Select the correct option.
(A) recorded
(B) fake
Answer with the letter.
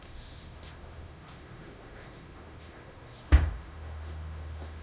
B